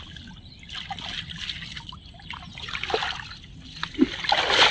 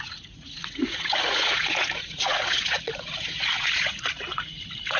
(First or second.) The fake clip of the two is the second